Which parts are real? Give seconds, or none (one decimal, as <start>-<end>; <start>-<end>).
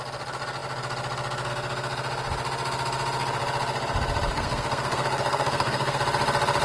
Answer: 0.0-4.3; 6.0-6.6